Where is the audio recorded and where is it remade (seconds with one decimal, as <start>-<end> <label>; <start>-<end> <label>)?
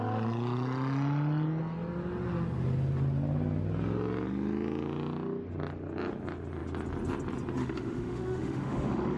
0.0-7.6 recorded; 7.6-9.2 remade